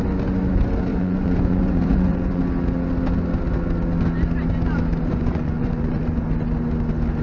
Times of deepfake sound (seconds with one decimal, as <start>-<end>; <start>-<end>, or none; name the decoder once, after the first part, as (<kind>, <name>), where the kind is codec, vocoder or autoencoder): 0.9-2.4 (vocoder, Vocos); 5.1-6.0